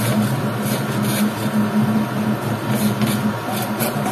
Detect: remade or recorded recorded